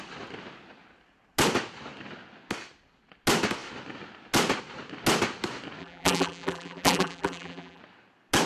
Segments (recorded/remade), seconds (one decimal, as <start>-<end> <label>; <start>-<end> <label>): 0.0-5.8 recorded; 5.8-7.8 remade; 7.8-8.5 recorded